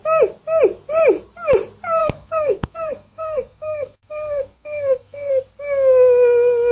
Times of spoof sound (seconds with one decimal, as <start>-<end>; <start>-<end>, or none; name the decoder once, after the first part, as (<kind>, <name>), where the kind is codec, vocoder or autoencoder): 2.0-5.3 (codec, SNAC)